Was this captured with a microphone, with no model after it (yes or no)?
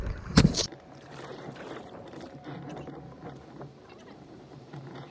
no